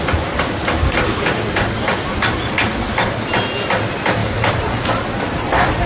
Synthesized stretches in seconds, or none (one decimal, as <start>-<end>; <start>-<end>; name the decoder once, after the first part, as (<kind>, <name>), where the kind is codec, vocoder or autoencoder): 4.2-4.9 (vocoder, BigVGAN v2)